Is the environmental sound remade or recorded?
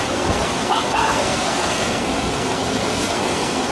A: remade